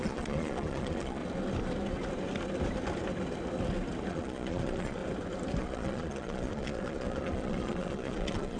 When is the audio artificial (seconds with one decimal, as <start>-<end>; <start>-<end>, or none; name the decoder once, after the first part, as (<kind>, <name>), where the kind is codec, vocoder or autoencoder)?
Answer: 0.0-1.2 (vocoder, Vocos); 4.1-5.0; 5.6-8.6